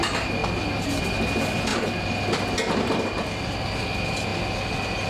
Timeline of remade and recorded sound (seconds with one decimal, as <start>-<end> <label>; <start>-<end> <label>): 0.0-5.1 recorded